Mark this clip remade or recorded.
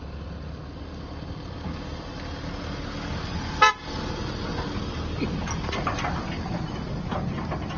recorded